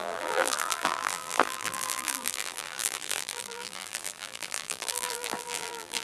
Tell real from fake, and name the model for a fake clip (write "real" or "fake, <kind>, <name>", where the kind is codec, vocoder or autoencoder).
fake, vocoder, BigVGAN v2